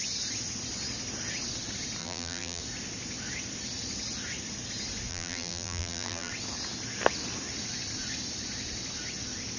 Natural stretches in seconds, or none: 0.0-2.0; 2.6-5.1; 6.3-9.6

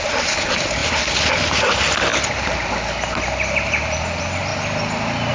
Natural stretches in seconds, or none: 0.8-1.3; 4.5-5.3

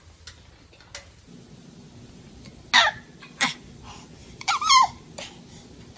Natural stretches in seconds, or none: 0.0-4.2; 5.0-6.0

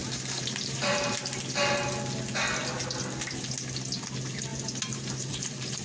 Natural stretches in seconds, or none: 1.4-4.5

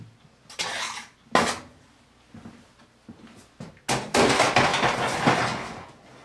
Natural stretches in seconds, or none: 0.0-6.2

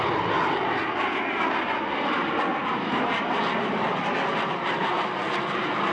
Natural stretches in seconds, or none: 0.0-2.6; 3.4-5.9

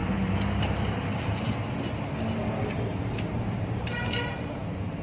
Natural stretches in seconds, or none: 0.0-3.0

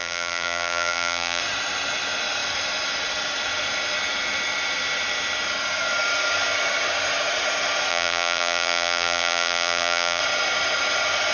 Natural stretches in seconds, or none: 1.4-7.9; 10.2-11.3